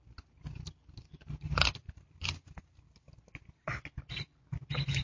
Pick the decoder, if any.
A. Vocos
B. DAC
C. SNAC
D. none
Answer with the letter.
D